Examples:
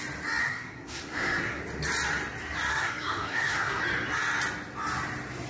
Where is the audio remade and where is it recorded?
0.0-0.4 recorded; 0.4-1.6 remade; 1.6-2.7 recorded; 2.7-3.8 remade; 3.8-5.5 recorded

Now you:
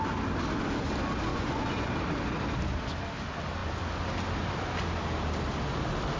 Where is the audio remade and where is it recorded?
0.0-1.3 recorded; 1.3-1.9 remade; 1.9-6.2 recorded

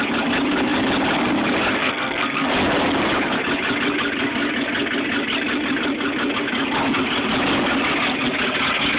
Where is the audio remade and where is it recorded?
0.0-1.8 recorded; 1.8-2.5 remade; 2.5-9.0 recorded

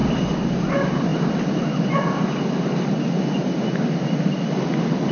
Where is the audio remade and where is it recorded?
0.0-5.1 recorded

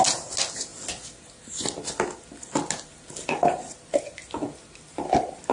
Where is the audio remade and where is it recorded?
0.0-5.5 recorded

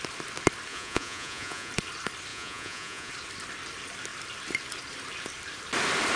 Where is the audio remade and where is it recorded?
0.0-0.7 recorded; 0.7-1.7 remade; 1.7-2.3 recorded; 2.3-3.1 remade; 3.1-6.2 recorded

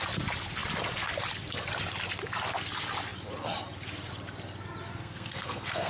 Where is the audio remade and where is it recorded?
0.0-4.9 recorded; 4.9-5.9 remade

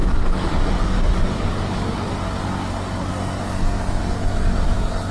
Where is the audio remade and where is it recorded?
0.0-3.1 remade; 3.1-4.0 recorded; 4.0-5.1 remade